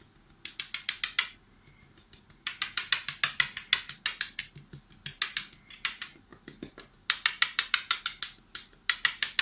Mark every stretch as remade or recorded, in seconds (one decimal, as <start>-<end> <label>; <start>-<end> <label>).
0.0-9.4 recorded